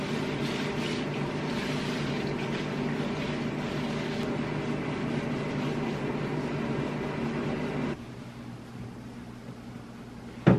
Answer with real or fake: real